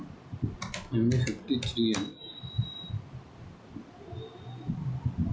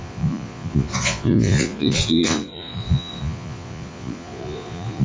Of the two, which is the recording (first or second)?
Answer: first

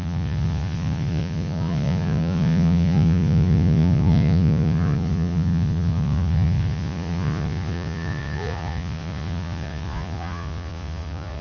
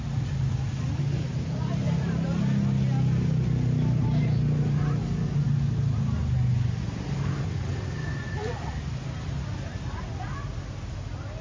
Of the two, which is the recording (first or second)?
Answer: second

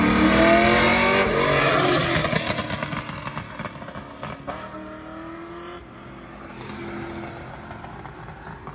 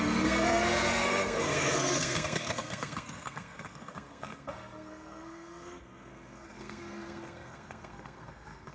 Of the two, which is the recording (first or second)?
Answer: first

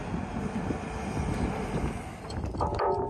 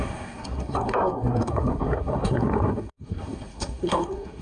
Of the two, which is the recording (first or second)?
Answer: first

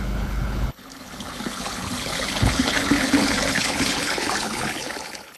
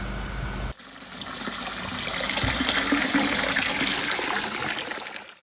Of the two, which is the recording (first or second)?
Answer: second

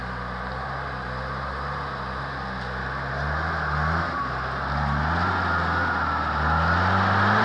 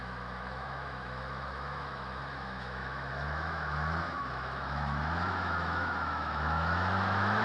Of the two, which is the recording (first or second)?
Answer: first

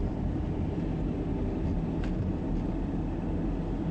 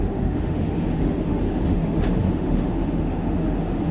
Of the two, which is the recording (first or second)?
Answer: first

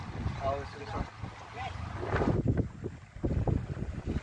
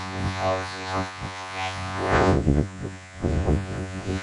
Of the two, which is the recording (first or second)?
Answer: first